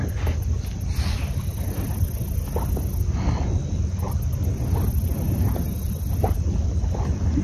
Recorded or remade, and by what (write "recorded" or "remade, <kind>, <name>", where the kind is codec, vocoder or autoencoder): recorded